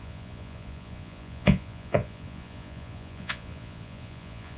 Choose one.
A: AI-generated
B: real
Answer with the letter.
A